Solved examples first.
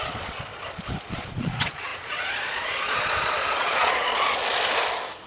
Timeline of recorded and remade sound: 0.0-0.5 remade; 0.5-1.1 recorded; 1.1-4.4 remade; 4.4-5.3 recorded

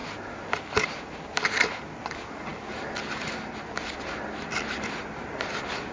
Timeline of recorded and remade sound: 0.0-5.9 recorded

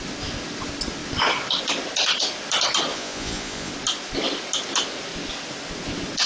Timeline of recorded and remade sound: 0.0-2.9 recorded; 2.9-3.7 remade; 3.7-6.3 recorded